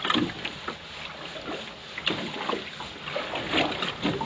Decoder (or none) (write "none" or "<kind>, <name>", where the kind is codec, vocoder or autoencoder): none